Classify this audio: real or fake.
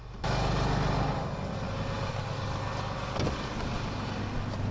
real